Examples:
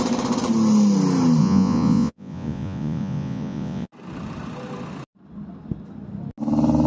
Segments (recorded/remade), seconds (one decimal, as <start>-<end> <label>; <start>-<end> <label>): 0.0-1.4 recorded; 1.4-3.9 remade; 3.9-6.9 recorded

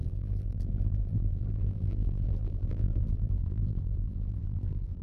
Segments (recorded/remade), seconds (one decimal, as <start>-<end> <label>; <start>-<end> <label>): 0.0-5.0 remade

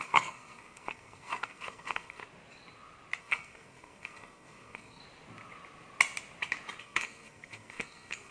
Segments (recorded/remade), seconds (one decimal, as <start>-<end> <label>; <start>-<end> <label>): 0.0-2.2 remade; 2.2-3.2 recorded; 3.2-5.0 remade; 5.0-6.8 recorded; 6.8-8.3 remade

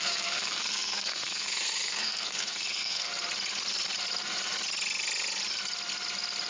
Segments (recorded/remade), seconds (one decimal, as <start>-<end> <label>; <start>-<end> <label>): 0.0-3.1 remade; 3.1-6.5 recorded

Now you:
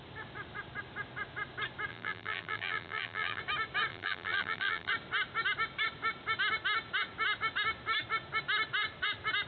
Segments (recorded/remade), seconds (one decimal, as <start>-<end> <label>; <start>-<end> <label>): 0.0-1.9 recorded; 1.9-3.4 remade; 3.4-3.9 recorded; 3.9-4.9 remade; 4.9-9.5 recorded

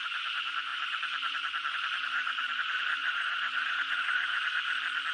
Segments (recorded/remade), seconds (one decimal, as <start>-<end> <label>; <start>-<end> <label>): 0.0-3.0 recorded; 3.0-4.4 remade; 4.4-5.1 recorded

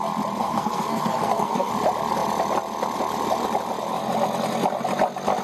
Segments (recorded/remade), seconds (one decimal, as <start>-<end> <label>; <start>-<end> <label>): 0.0-0.4 recorded; 0.4-1.7 remade; 1.7-5.4 recorded

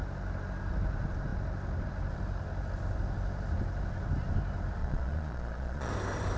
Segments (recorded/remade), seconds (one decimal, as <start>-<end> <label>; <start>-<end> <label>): 0.0-4.8 recorded; 4.8-5.9 remade; 5.9-6.4 recorded